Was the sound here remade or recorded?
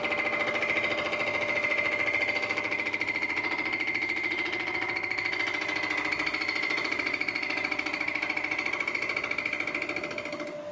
recorded